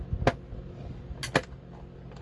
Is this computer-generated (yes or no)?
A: no